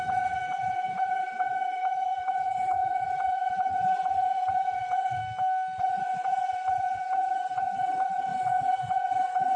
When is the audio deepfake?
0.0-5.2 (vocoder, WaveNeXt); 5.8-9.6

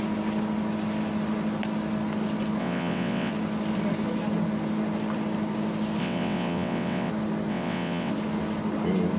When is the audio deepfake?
2.6-3.3 (vocoder, WaveNeXt); 6.0-7.1; 7.5-8.1

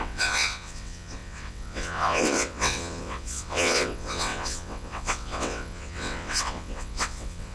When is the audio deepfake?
0.0-7.5 (vocoder, WaveNeXt)

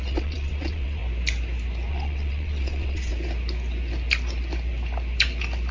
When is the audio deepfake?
0.0-1.0 (vocoder, WaveNeXt); 1.9-3.1